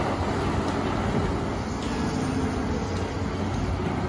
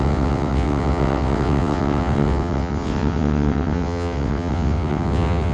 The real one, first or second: first